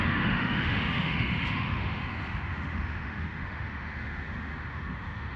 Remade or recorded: remade